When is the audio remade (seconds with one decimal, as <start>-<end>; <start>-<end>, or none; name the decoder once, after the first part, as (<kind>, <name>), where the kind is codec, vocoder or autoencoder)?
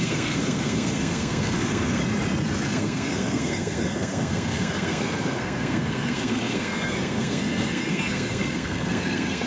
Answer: 0.0-2.0 (codec, SNAC); 2.6-9.5